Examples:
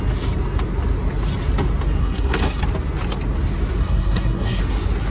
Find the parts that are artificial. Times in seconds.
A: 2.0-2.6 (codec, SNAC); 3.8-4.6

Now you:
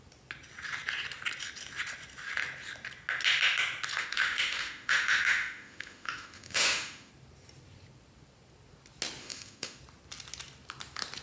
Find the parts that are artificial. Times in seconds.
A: 4.0-7.1 (autoencoder, DAC-VAE); 9.2-9.8

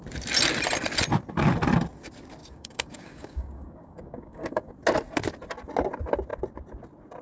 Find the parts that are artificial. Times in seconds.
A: 2.4-4.7 (codec, DAC)

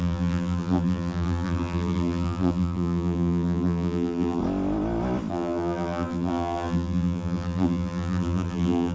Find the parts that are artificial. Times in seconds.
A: 0.0-4.4 (vocoder, BigVGAN v2); 5.3-8.9

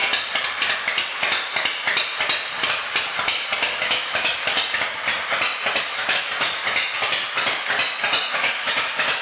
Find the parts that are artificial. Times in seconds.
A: 3.8-4.5 (autoencoder, DAC-VAE); 5.8-6.6; 8.3-9.2

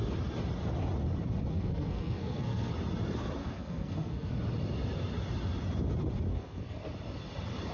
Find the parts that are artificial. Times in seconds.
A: 1.5-2.7 (codec, SNAC); 3.4-4.3; 6.3-6.8

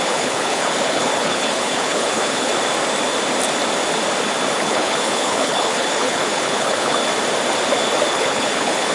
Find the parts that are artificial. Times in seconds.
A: 0.0-2.5 (codec, HILCodec); 4.5-7.0; 8.1-8.9